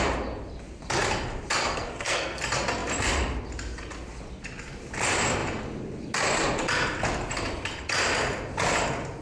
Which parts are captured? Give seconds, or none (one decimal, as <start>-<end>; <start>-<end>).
0.0-1.6; 2.4-9.2